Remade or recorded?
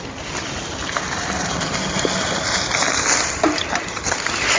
recorded